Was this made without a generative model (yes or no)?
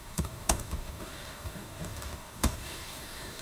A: no